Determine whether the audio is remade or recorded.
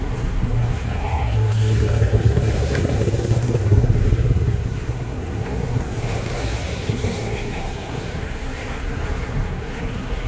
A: remade